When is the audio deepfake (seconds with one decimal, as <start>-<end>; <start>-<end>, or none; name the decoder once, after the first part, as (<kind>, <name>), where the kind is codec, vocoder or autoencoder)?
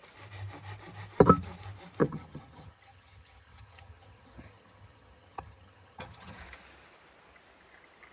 2.0-6.4 (vocoder, HiFi-GAN)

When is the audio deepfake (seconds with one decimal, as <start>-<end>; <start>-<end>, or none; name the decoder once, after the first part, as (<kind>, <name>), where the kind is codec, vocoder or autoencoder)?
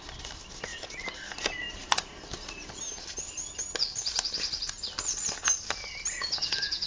none